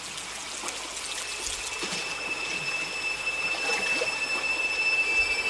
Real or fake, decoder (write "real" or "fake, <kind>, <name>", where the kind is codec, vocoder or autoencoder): real